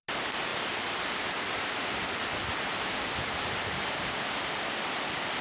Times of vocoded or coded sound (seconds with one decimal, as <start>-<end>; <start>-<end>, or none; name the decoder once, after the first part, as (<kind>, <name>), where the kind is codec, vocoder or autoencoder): none